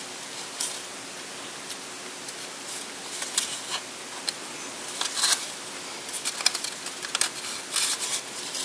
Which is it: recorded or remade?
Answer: recorded